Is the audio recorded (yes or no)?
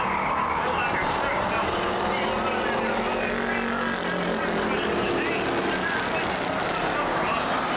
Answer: yes